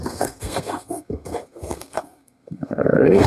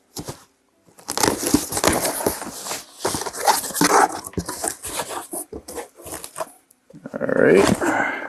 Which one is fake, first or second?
first